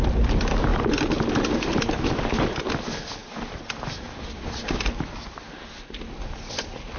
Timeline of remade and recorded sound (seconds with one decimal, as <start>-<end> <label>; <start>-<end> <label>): 0.0-7.0 recorded